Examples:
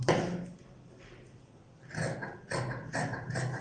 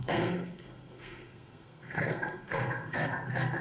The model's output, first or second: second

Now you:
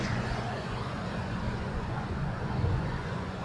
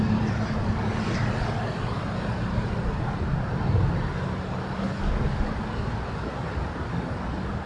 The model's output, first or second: first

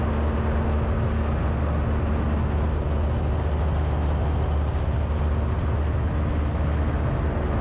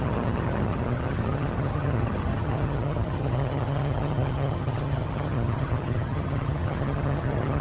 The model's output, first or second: second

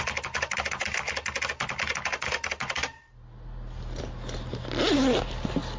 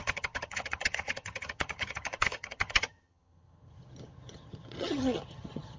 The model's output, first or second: second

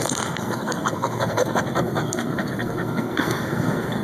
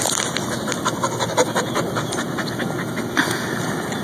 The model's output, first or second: first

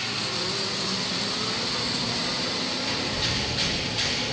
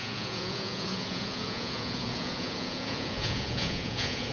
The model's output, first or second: second